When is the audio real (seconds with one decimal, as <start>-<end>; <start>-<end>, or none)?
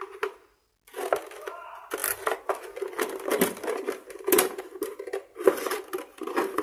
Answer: 0.0-6.6